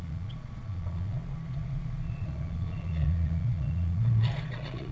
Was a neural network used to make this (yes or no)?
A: yes